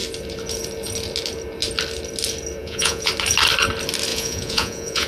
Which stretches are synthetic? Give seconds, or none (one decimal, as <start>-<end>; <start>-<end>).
2.6-3.1; 4.1-5.1